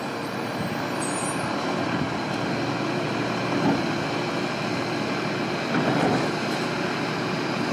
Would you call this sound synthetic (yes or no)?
no